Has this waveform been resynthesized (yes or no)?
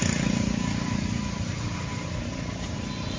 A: no